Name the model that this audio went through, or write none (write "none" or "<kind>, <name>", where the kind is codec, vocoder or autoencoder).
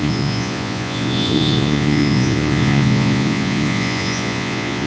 vocoder, Vocos